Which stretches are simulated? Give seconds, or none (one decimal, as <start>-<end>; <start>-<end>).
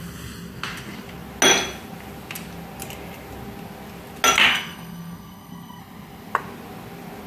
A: 4.5-5.8